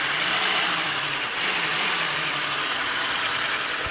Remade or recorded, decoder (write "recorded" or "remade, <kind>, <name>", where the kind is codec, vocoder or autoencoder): remade, vocoder, BigVGAN v2